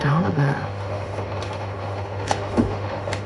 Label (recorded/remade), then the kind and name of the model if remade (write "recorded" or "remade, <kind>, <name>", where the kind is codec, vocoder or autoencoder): remade, autoencoder, DAC-VAE